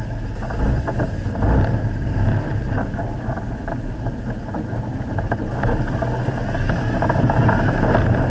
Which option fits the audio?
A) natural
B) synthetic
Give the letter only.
A